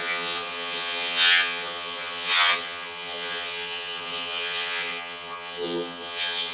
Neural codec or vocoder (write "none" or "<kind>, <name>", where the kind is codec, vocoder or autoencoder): vocoder, HiFi-GAN